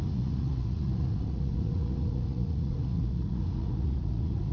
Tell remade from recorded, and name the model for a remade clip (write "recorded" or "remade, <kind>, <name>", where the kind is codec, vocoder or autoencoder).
remade, vocoder, Vocos